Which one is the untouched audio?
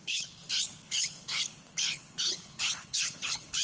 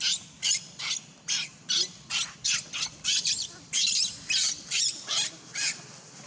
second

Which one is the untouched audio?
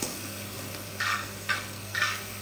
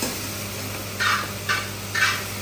second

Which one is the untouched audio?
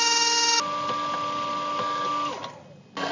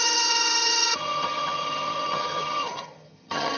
first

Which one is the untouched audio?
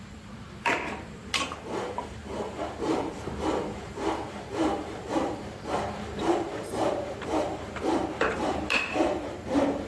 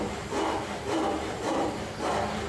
second